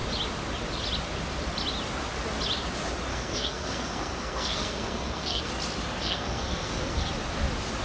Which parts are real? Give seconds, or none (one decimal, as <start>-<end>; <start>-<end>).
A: 0.0-3.1; 5.5-6.0; 7.1-7.8